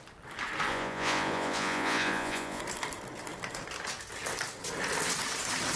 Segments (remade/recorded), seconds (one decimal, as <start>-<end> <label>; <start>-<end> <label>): 0.0-0.7 recorded; 0.7-2.6 remade; 2.6-5.8 recorded